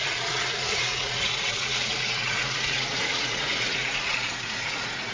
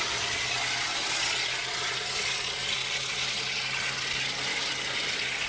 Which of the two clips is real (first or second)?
second